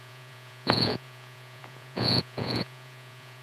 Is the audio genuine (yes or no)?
no